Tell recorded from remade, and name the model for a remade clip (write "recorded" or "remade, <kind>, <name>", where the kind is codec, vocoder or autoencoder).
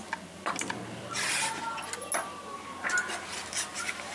recorded